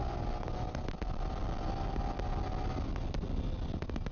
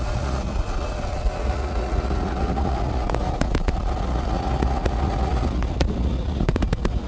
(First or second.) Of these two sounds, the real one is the first